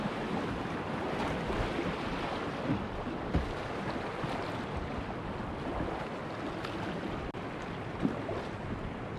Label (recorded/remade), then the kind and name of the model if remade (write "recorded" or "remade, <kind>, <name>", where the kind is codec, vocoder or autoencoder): recorded